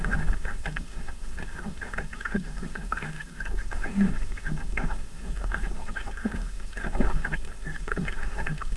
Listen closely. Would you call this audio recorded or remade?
remade